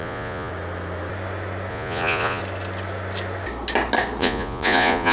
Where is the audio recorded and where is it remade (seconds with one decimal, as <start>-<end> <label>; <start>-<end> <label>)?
0.0-0.5 remade; 0.5-1.7 recorded; 1.7-2.4 remade; 2.4-4.2 recorded; 4.2-5.1 remade